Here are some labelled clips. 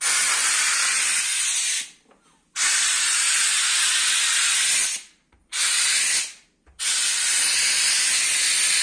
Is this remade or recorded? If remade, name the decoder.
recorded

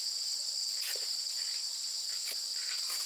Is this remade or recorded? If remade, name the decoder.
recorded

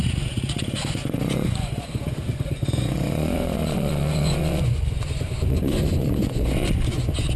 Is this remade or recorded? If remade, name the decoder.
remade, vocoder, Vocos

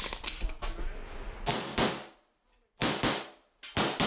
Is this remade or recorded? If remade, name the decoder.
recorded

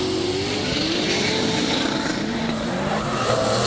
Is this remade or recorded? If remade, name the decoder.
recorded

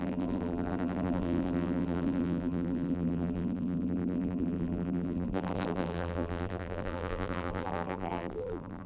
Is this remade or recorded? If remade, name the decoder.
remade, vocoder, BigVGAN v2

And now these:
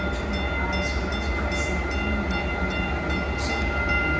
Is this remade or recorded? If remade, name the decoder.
recorded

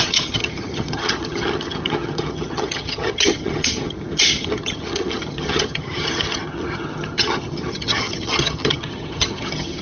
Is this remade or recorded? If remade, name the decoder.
remade, vocoder, HiFi-GAN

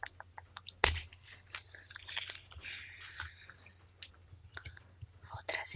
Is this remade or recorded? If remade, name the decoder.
recorded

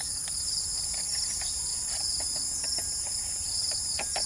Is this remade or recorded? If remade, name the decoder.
recorded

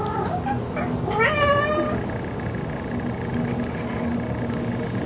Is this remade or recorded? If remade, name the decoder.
recorded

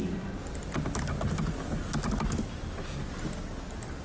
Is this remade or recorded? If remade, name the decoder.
recorded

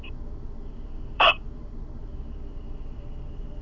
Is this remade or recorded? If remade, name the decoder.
remade, vocoder, BigVGAN v2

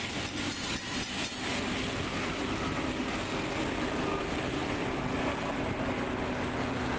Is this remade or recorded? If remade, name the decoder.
recorded